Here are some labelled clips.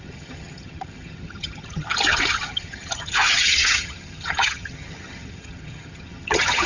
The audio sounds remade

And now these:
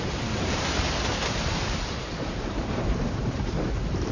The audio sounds remade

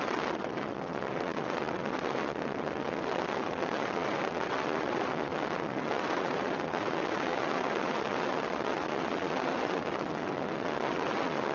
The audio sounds remade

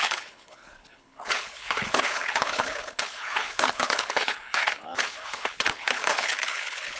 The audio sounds remade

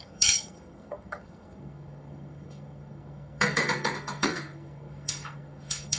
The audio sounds remade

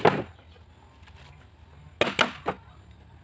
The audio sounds recorded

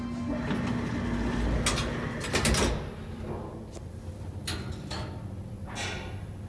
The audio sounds recorded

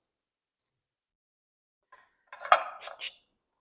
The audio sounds recorded